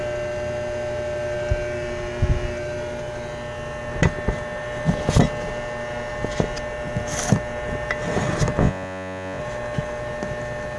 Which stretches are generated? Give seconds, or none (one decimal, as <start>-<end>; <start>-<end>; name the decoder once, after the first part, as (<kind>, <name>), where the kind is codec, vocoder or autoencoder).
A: 8.6-9.4 (vocoder, Vocos)